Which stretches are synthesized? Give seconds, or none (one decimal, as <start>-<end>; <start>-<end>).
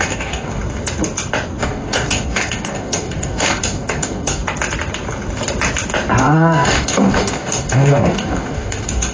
0.0-0.6; 1.6-4.4; 6.2-9.1